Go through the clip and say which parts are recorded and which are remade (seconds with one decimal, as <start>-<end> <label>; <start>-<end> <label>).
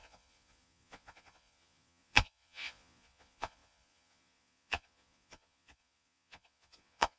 0.0-7.2 remade